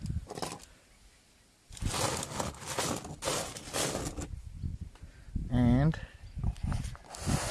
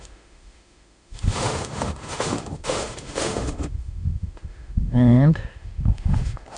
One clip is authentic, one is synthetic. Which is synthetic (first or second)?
second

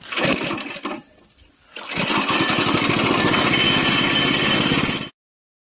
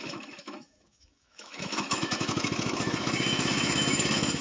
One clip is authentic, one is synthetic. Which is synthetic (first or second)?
second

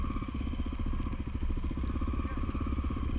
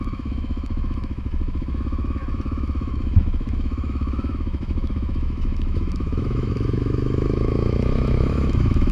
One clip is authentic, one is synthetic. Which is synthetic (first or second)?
second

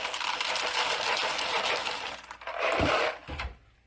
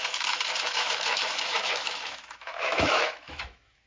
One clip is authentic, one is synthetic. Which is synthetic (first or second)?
second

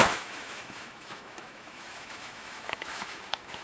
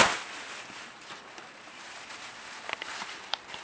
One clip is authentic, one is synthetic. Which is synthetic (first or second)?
first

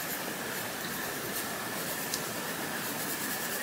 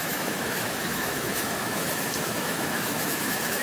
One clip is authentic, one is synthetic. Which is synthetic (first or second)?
second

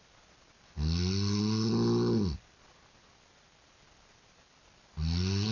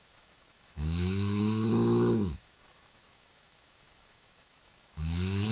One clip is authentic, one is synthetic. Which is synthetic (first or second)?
second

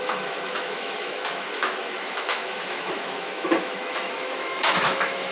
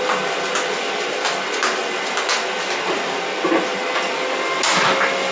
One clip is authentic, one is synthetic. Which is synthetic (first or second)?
first